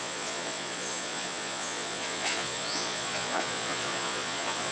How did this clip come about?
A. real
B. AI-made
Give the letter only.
B